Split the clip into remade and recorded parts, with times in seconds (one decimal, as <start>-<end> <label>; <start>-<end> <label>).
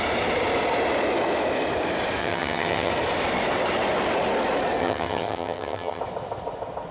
0.0-2.2 recorded; 2.2-2.9 remade; 2.9-4.8 recorded; 4.8-6.0 remade; 6.0-6.9 recorded